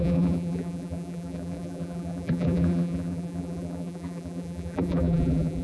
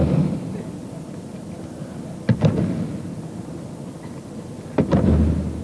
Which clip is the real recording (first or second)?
second